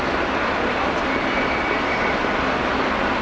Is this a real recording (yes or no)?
yes